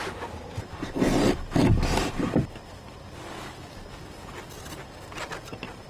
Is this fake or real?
real